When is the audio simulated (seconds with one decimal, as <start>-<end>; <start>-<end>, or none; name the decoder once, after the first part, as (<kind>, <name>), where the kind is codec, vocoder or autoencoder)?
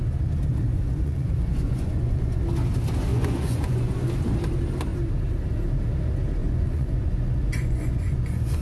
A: 0.7-2.4 (vocoder, Vocos); 3.1-4.1; 6.4-8.6